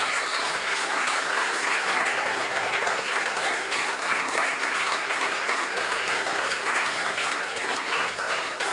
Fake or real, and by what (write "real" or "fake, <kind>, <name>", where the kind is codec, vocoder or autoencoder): fake, codec, SNAC